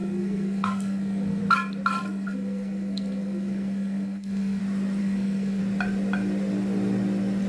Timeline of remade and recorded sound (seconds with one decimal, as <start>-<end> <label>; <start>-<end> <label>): 0.0-1.4 remade; 1.4-2.0 recorded; 2.0-4.6 remade; 4.6-5.0 recorded; 5.0-5.6 remade; 5.6-7.5 recorded